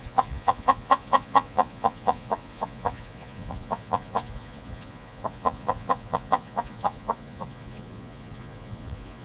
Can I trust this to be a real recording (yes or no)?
no